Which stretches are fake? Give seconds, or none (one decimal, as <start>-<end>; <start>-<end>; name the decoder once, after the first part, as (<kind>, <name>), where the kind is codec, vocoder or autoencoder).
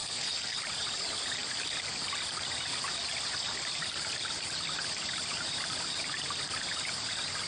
0.0-0.6 (codec, SNAC)